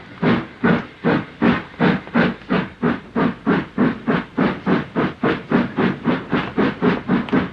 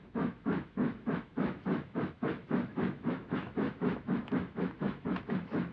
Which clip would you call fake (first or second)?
second